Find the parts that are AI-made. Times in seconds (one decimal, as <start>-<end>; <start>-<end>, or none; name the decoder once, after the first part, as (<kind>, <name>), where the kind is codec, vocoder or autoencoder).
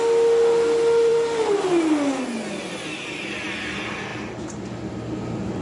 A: 4.1-5.6 (vocoder, BigVGAN v2)